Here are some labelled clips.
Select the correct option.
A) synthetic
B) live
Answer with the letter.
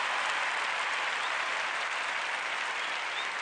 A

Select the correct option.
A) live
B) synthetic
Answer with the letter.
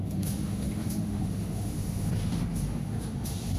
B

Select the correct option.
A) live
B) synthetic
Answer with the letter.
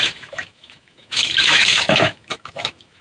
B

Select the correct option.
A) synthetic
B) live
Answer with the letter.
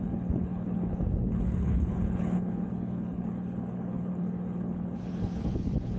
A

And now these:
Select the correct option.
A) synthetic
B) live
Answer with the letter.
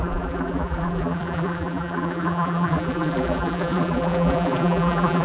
A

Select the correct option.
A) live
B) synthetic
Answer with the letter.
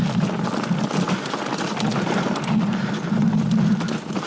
A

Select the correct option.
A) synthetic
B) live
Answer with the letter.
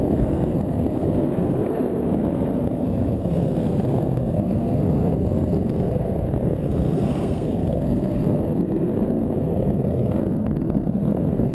A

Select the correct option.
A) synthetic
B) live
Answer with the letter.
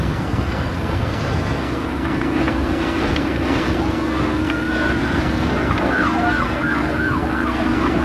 A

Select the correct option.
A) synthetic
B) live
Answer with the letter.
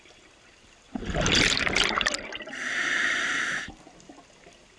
B